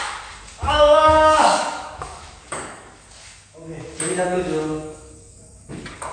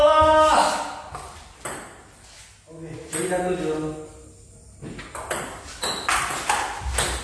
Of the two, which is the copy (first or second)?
first